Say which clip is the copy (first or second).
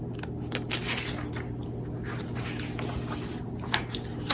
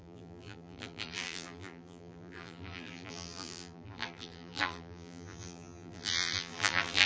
second